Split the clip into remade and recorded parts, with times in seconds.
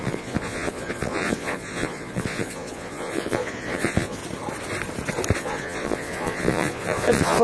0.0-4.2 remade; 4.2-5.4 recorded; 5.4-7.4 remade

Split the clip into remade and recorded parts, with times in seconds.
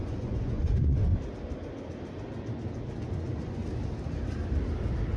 0.0-1.1 remade; 1.1-3.1 recorded; 3.1-3.6 remade; 3.6-5.2 recorded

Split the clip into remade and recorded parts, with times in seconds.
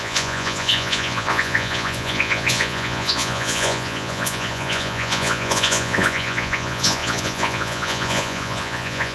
0.0-9.1 remade